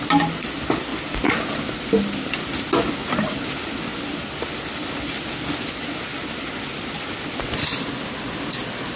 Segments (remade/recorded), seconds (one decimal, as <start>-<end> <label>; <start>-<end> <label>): 0.0-9.0 recorded